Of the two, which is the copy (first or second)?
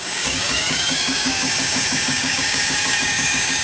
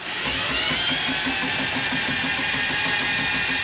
first